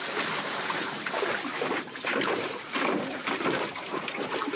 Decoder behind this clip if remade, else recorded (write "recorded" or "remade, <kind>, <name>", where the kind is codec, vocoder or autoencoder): remade, vocoder, BigVGAN v2